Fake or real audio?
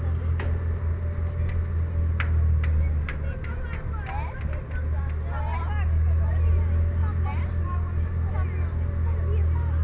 real